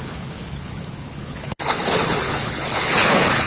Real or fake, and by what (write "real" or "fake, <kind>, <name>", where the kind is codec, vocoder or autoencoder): fake, codec, HILCodec